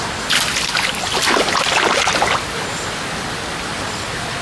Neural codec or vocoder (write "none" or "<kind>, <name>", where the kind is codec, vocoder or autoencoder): none